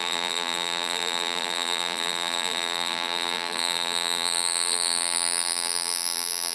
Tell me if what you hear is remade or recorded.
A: remade